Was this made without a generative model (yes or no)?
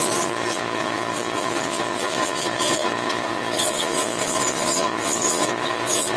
no